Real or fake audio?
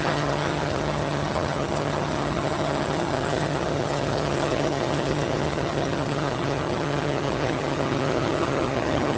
fake